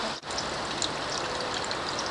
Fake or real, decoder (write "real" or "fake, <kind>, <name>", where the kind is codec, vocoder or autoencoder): real